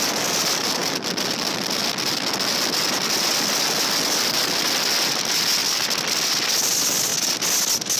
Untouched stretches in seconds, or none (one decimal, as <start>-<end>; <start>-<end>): 0.0-5.6; 6.3-8.0